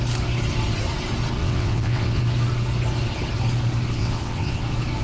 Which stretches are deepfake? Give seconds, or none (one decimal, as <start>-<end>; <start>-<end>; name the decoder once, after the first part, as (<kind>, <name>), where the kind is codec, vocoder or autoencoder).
1.4-2.2 (vocoder, WaveNeXt); 4.0-4.6